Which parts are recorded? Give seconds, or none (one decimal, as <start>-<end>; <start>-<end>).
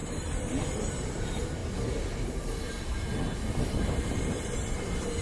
1.6-3.8